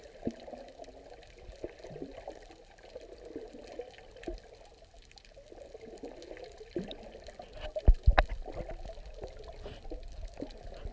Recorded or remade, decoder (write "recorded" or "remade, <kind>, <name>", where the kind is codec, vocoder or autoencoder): recorded